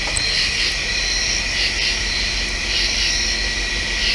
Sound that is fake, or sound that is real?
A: real